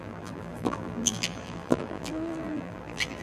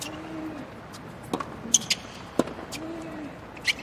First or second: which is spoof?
first